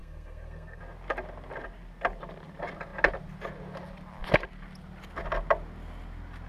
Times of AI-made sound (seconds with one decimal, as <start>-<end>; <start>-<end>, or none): 0.0-0.8